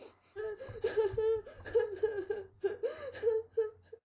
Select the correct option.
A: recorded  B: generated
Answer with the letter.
A